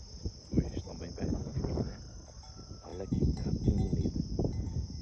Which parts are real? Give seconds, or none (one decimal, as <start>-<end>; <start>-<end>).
0.0-1.3; 1.9-5.0